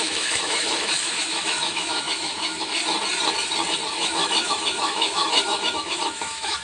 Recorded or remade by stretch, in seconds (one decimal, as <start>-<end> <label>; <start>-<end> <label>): 0.0-2.8 remade; 2.8-3.9 recorded; 3.9-6.6 remade